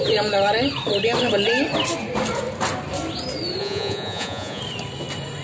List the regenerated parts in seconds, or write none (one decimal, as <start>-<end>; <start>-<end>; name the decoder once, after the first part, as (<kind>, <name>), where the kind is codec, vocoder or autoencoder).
3.6-4.6 (vocoder, Vocos)